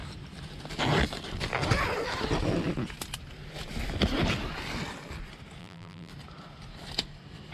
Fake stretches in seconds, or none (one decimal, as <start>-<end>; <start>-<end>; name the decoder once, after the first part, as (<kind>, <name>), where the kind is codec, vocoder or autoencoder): 5.6-6.1 (vocoder, BigVGAN v2)